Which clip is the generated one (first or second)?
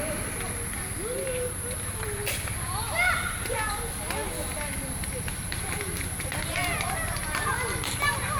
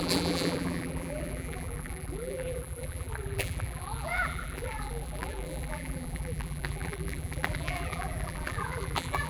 second